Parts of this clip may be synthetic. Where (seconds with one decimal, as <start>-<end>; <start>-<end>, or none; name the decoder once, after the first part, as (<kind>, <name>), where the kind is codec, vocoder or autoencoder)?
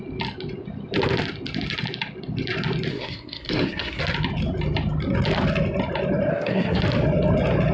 2.9-4.0 (codec, SNAC); 6.3-6.8